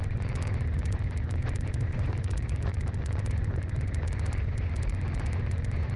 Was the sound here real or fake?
fake